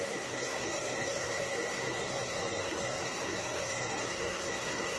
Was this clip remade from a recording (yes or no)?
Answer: yes